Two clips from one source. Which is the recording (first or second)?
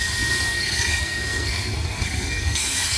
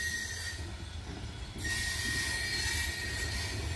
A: second